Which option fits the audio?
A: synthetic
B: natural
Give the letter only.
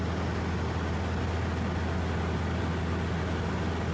B